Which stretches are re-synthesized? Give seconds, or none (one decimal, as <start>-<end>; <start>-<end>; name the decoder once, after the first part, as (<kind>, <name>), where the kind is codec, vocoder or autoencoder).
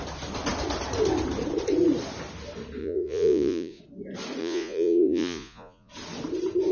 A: 2.8-3.8 (vocoder, Vocos); 4.4-5.9